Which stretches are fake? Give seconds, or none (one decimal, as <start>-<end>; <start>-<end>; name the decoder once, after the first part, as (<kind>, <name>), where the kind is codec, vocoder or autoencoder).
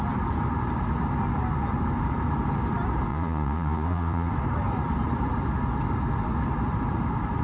3.1-4.3 (vocoder, Vocos)